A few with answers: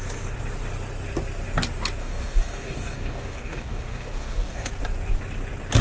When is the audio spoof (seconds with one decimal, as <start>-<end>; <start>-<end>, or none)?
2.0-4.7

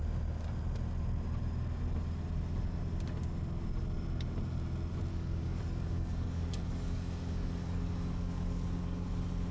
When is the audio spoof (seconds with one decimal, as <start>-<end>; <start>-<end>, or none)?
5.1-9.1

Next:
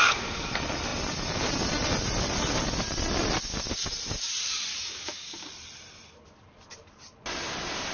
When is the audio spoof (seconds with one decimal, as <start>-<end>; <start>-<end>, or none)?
0.0-0.5; 4.7-5.5

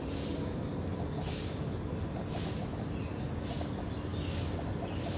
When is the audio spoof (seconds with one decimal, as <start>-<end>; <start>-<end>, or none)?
none